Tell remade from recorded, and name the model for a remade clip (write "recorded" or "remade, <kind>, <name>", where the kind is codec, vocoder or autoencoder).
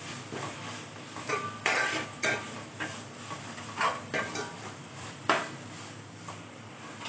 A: remade, vocoder, BigVGAN v2